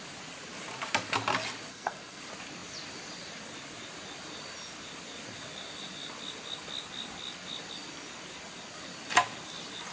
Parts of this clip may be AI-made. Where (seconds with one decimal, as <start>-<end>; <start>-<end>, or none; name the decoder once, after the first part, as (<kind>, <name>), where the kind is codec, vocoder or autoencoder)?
1.7-2.2 (codec, SNAC)